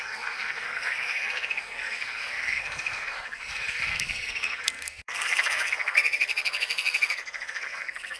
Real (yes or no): no